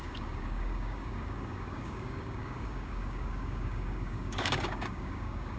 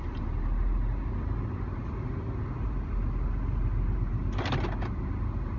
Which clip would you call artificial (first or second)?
first